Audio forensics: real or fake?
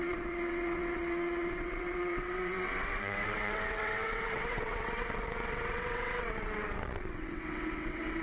fake